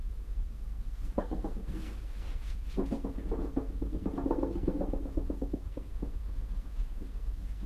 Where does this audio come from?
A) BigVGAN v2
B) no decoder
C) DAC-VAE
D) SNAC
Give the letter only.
D